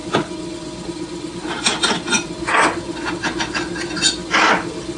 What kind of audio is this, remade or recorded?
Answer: recorded